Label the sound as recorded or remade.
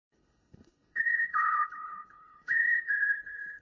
remade